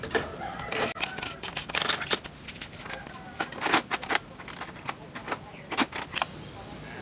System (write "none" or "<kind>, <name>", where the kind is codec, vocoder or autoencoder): none